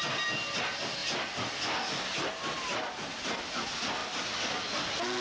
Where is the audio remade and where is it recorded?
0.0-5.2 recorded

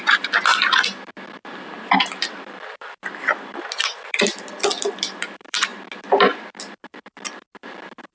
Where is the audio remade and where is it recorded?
0.0-0.5 remade; 0.5-1.0 recorded; 1.0-3.5 remade; 3.5-4.0 recorded; 4.0-5.7 remade; 5.7-6.6 recorded; 6.6-8.1 remade

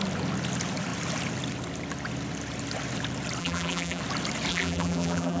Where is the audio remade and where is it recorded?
0.0-3.4 recorded; 3.4-4.0 remade; 4.0-4.5 recorded; 4.5-5.4 remade

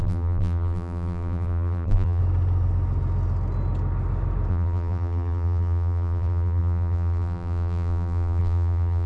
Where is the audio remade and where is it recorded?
0.0-2.2 remade; 2.2-4.5 recorded; 4.5-9.1 remade

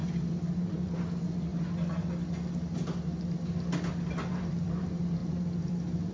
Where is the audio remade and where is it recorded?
0.0-0.5 recorded; 0.5-1.5 remade; 1.5-4.3 recorded; 4.3-6.1 remade

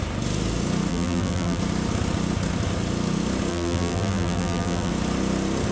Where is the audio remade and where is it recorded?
0.0-0.9 recorded; 0.9-1.6 remade; 1.6-3.5 recorded; 3.5-4.9 remade; 4.9-5.7 recorded

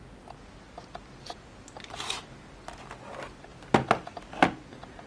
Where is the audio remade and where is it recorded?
0.0-5.1 recorded